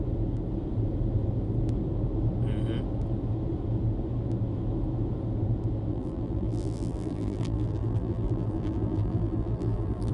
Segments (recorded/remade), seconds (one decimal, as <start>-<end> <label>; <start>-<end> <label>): 0.0-5.9 recorded; 5.9-10.1 remade

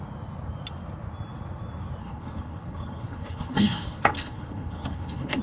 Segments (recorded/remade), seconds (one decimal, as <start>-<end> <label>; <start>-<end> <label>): 0.0-2.0 recorded; 2.0-5.4 remade